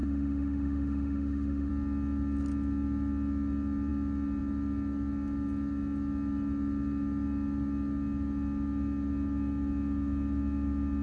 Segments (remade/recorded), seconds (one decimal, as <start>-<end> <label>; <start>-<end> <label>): 0.0-1.7 remade; 1.7-11.0 recorded